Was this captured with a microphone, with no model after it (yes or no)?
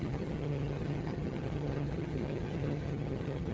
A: no